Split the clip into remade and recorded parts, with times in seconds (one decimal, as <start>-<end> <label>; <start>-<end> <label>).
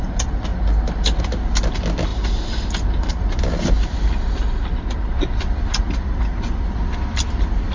0.0-7.7 recorded